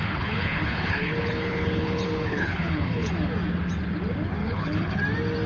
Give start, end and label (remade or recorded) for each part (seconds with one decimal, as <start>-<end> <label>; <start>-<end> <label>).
0.0-3.1 remade; 3.1-4.4 recorded; 4.4-5.0 remade; 5.0-5.5 recorded